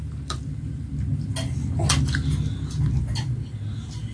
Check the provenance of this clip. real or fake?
real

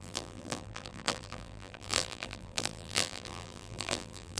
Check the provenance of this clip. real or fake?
fake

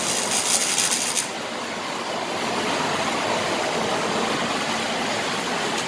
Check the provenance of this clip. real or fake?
real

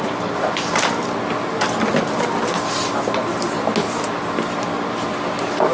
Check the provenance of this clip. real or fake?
real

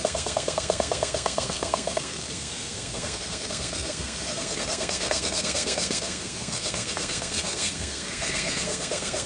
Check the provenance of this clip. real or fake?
fake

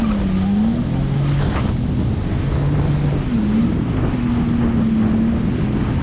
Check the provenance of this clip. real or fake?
real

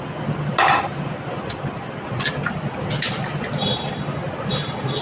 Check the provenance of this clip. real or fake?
real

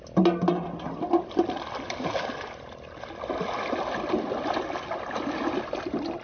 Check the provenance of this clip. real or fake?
real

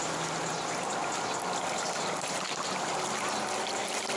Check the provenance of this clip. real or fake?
real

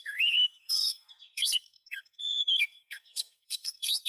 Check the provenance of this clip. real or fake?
fake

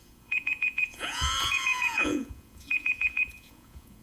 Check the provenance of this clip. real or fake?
fake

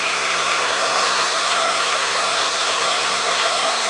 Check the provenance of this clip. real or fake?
fake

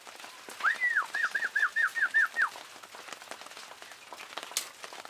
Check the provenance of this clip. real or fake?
real